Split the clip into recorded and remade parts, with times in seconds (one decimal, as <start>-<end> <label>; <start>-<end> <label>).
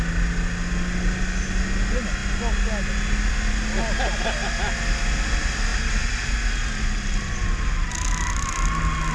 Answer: 0.0-9.1 recorded